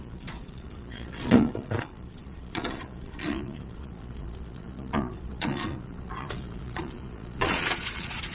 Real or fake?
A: fake